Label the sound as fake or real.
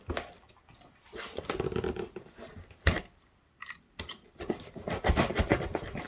real